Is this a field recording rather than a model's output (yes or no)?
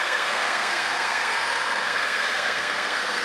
no